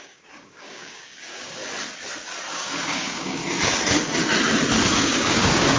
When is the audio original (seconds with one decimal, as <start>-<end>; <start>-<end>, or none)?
1.6-2.5; 3.4-4.9